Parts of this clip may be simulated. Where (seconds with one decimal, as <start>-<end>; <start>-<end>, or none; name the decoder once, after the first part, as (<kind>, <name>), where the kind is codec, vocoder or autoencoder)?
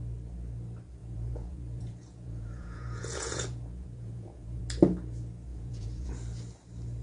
1.0-4.6 (vocoder, Vocos); 5.5-6.1